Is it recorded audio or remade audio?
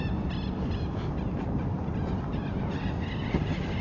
recorded